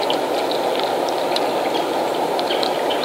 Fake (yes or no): no